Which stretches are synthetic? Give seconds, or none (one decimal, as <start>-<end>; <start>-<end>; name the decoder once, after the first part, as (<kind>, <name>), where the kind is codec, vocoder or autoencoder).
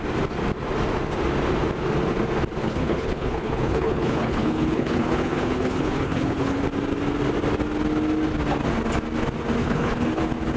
2.6-6.6 (codec, HILCodec); 9.6-10.2